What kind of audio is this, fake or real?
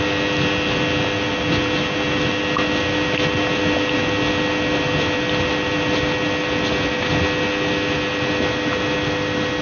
real